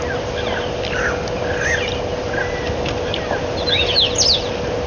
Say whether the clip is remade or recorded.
recorded